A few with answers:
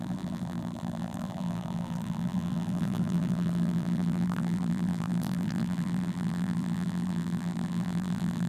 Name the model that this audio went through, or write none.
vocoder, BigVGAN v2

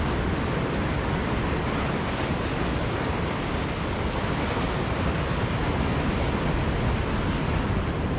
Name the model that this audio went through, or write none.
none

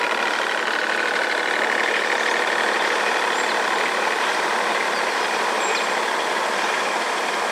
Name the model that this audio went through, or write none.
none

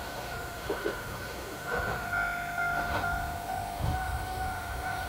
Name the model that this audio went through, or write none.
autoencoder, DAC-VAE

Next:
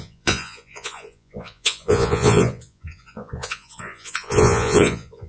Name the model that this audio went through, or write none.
vocoder, Vocos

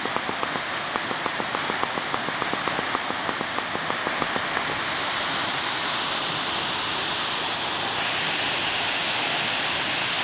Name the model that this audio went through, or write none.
none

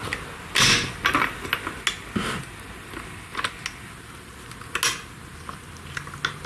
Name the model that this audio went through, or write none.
none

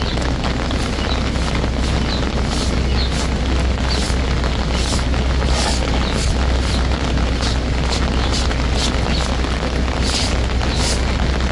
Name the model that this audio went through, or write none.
none